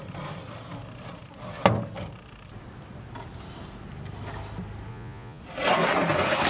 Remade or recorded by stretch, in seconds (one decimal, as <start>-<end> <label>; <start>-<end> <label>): 0.0-4.9 recorded; 4.9-5.4 remade; 5.4-6.5 recorded